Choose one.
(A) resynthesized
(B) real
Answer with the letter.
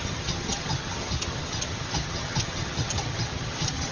A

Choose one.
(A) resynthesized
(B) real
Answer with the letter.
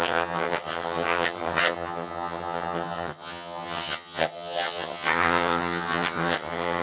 A